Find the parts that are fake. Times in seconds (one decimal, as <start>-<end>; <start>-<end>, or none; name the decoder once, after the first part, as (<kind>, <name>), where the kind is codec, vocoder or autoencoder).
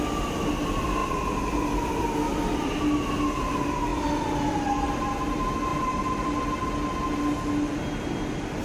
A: 1.0-2.8 (vocoder, BigVGAN v2); 3.9-4.6; 5.7-6.4